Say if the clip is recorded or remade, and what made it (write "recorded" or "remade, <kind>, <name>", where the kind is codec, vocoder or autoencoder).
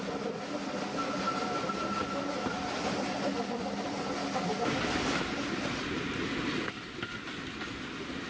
recorded